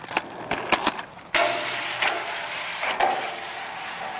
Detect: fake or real real